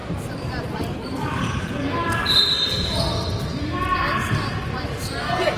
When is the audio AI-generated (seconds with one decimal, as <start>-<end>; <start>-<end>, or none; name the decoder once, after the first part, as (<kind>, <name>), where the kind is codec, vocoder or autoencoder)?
0.6-1.8 (vocoder, BigVGAN v2)